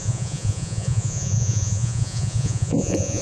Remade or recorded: remade